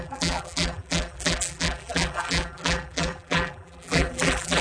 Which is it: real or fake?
fake